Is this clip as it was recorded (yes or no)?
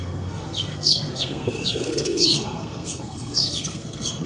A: no